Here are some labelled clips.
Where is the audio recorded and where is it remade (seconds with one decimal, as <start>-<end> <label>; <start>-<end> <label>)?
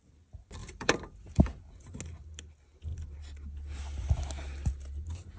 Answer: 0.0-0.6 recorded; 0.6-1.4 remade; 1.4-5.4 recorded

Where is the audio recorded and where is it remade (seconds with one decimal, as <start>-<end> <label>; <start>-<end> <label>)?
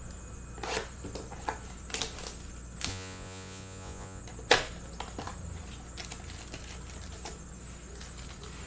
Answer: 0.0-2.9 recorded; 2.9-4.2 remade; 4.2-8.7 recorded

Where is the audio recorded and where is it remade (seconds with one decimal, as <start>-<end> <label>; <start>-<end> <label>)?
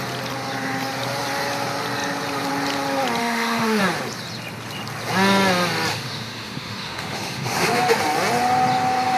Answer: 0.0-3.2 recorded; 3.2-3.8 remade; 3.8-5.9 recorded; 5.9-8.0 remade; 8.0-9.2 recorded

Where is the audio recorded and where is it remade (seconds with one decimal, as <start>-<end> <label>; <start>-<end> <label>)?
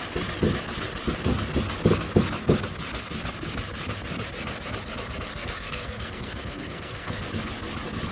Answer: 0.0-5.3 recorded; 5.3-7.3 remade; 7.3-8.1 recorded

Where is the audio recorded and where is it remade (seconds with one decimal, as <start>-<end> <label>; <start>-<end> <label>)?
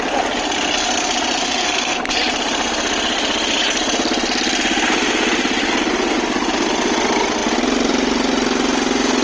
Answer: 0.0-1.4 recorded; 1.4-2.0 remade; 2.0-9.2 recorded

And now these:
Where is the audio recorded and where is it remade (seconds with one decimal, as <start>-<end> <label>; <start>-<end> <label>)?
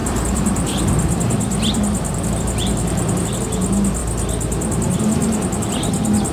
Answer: 0.0-3.4 remade; 3.4-6.3 recorded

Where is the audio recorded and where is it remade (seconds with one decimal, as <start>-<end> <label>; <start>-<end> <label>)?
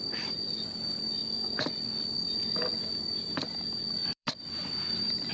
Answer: 0.0-4.0 recorded; 4.0-5.3 remade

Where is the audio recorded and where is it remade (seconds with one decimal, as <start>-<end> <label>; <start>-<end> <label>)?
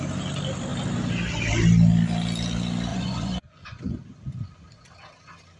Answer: 0.0-2.9 recorded; 2.9-3.8 remade; 3.8-5.6 recorded